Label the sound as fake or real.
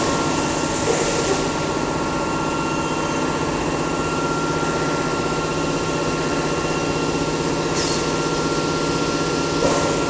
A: real